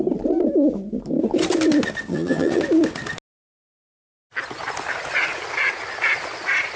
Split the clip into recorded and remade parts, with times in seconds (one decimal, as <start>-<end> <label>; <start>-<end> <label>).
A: 0.0-2.1 recorded; 2.1-2.6 remade; 2.6-6.8 recorded